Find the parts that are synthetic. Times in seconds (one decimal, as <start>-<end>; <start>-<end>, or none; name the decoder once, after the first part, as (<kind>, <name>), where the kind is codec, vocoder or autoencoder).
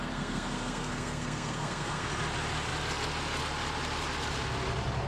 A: 0.0-2.1 (codec, SNAC)